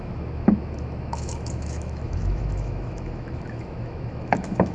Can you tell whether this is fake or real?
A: fake